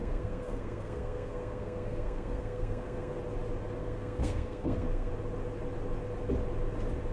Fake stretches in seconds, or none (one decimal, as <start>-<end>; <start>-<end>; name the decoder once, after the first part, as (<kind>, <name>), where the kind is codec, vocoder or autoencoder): 0.0-3.2 (codec, SNAC); 3.8-5.1

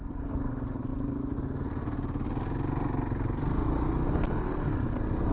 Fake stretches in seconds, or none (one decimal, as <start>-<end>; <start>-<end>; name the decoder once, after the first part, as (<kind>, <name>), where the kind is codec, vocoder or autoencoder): none